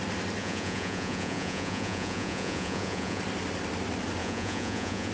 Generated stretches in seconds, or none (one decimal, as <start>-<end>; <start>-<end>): 0.4-3.2; 4.2-5.1